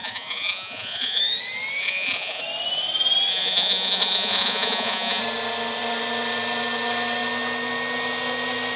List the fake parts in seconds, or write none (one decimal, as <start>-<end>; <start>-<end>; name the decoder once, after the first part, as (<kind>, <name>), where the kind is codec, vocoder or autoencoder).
0.0-1.2 (vocoder, Vocos); 1.8-2.4; 3.3-5.2